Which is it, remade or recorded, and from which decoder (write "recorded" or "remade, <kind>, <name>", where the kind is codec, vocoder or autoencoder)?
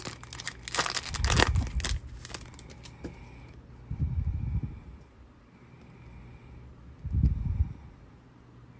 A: recorded